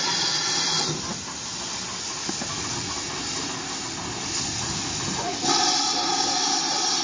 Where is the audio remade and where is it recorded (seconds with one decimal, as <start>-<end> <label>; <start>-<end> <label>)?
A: 0.0-7.0 recorded